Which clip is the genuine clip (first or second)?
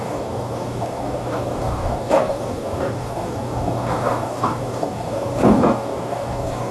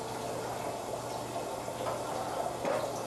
second